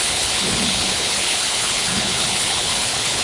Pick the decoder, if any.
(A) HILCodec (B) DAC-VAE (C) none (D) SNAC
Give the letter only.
A